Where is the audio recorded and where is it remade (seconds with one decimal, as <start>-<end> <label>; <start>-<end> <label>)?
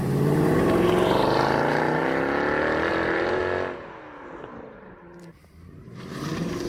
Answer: 0.0-2.0 remade; 2.0-2.9 recorded; 2.9-3.4 remade; 3.4-4.2 recorded; 4.2-6.7 remade